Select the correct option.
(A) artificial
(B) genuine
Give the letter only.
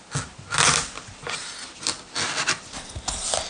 B